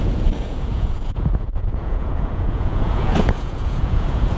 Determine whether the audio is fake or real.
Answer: fake